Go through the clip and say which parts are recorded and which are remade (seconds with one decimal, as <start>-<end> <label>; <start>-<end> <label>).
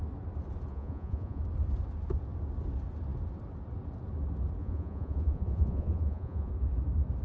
0.0-0.7 recorded; 0.7-1.4 remade; 1.4-4.6 recorded; 4.6-6.5 remade; 6.5-7.2 recorded